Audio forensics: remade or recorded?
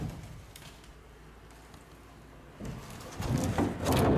recorded